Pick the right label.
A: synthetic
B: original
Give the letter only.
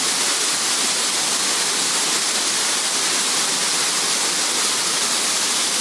B